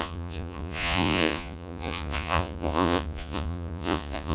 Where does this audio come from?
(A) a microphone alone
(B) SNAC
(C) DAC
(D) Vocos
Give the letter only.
D